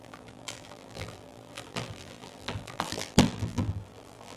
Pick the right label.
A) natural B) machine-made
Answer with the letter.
B